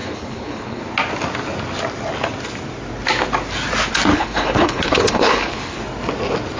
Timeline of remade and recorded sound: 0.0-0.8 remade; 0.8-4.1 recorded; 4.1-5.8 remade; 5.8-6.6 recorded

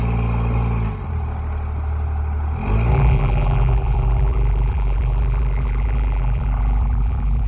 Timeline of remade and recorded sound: 0.0-2.9 recorded; 2.9-7.5 remade

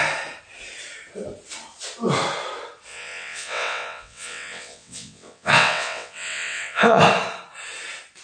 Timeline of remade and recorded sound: 0.0-2.9 recorded; 2.9-7.0 remade; 7.0-8.2 recorded